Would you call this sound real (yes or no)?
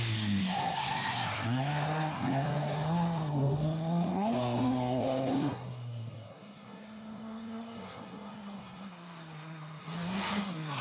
no